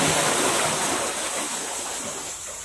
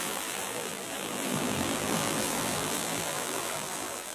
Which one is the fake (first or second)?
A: second